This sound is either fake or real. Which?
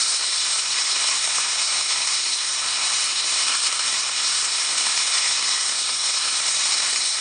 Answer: fake